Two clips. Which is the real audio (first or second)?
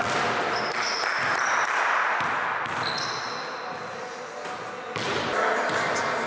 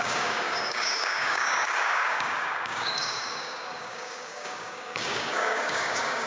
first